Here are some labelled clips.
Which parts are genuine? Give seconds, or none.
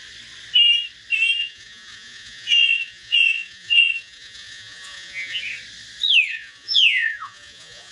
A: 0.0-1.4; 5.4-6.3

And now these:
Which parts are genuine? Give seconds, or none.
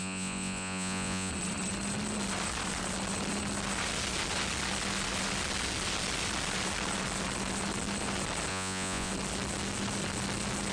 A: 1.3-8.5; 9.1-10.7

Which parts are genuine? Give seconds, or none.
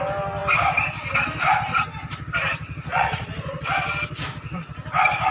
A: 0.0-2.9; 3.6-5.3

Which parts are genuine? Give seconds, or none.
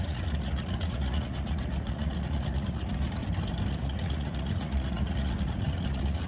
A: 3.2-3.7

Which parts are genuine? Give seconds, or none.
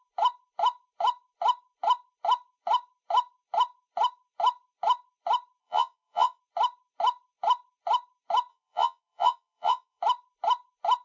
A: 0.0-5.6; 6.4-8.5; 10.0-11.0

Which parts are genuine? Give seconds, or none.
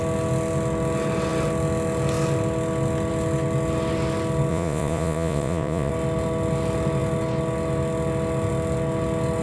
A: 0.0-4.5; 5.9-9.4